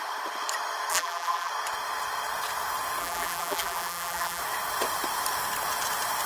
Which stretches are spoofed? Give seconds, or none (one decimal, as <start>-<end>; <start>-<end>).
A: 0.9-1.5; 3.0-4.4